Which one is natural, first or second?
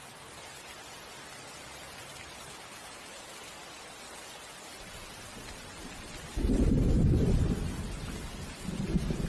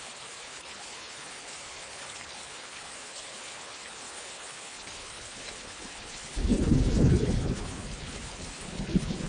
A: first